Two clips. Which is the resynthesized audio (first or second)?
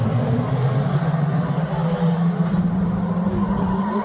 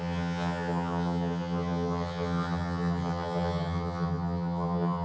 second